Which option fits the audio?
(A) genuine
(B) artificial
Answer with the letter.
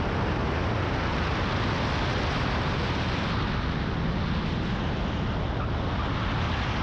A